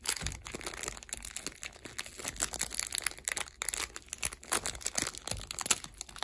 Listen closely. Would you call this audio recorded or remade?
recorded